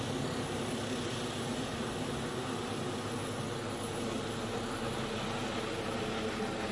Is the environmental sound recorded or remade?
recorded